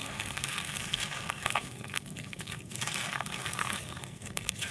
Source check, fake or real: fake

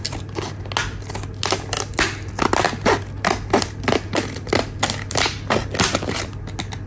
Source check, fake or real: real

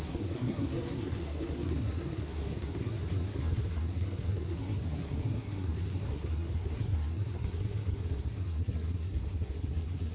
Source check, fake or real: fake